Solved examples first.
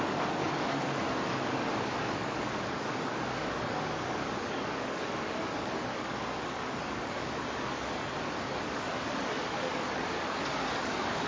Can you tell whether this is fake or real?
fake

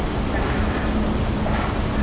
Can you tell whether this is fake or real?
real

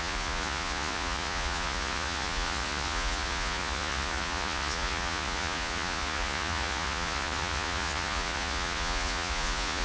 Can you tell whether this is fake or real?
fake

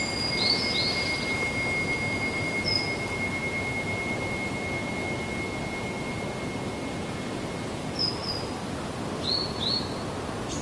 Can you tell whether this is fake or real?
real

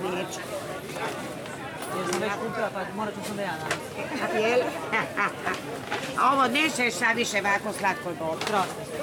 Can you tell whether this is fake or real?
real